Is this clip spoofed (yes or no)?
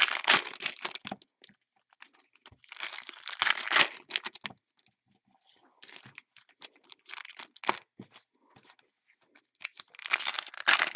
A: no